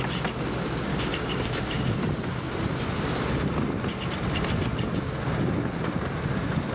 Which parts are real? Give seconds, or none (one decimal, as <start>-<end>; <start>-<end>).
0.0-0.9; 1.5-6.7